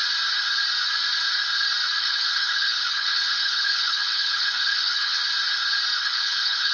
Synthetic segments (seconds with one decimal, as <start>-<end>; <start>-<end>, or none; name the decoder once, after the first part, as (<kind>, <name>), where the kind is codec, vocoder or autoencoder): 2.0-5.2 (codec, HILCodec); 6.0-6.7